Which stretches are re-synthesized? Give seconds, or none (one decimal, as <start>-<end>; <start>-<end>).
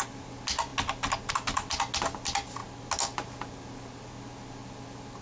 none